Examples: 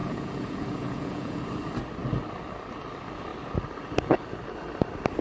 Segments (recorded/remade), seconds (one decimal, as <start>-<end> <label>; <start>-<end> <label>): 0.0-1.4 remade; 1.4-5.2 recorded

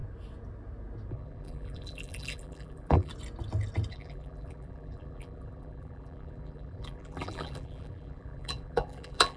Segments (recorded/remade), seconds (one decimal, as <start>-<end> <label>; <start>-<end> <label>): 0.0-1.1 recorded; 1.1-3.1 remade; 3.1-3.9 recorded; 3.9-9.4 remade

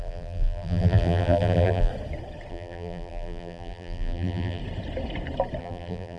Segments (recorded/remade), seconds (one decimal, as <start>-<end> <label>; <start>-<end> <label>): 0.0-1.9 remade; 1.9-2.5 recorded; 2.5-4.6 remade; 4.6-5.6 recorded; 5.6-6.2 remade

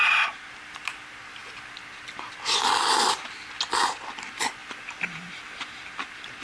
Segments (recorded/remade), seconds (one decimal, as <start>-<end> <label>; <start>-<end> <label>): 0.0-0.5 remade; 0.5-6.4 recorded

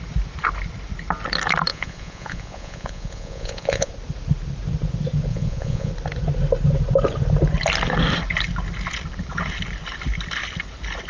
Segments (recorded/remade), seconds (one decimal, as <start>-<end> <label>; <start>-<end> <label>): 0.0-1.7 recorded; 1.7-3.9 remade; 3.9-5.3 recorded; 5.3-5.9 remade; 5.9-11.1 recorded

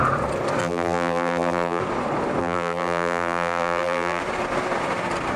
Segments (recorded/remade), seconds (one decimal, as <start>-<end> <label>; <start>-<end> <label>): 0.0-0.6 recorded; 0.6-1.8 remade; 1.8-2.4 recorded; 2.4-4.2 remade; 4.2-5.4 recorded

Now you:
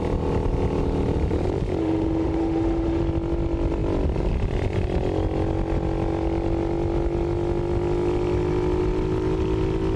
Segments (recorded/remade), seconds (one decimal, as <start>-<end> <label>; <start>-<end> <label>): 0.0-1.8 recorded; 1.8-3.0 remade; 3.0-10.0 recorded